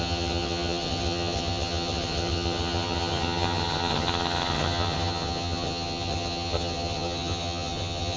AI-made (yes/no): yes